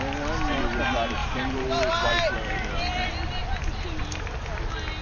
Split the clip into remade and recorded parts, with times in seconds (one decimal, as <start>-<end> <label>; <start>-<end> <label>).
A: 0.0-1.2 recorded; 1.2-4.2 remade; 4.2-5.0 recorded